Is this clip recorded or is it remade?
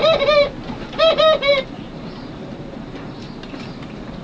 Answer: remade